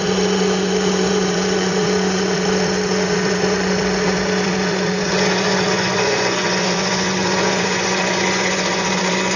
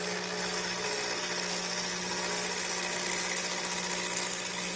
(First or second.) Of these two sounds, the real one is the second